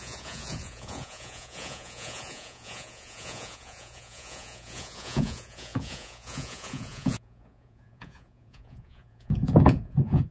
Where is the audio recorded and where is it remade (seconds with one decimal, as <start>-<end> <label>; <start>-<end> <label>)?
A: 0.0-10.3 remade